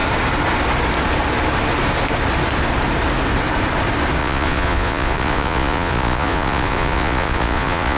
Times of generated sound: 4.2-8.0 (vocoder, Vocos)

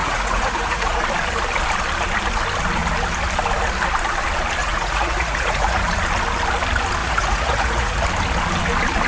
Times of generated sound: 0.0-1.0 (vocoder, Vocos); 4.6-5.8; 7.0-8.0

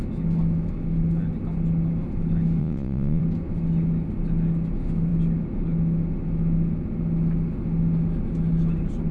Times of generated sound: 2.6-3.2 (vocoder, Vocos)

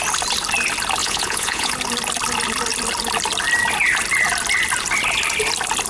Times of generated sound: 1.0-1.7 (vocoder, Vocos)

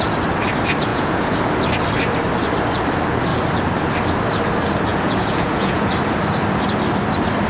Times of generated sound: 0.9-1.4 (vocoder, Vocos); 4.9-5.9

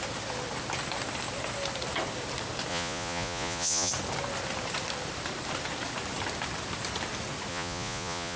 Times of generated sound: 2.7-3.9 (vocoder, Vocos); 7.5-8.4